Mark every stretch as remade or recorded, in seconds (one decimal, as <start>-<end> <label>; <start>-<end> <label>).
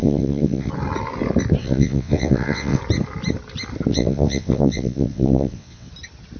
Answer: 0.0-0.7 remade; 0.7-1.6 recorded; 1.6-2.8 remade; 2.8-3.9 recorded; 3.9-5.9 remade; 5.9-6.4 recorded